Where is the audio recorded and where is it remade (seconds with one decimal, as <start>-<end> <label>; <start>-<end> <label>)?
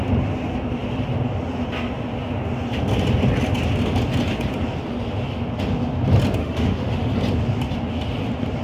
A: 0.0-6.4 recorded; 6.4-7.1 remade; 7.1-8.6 recorded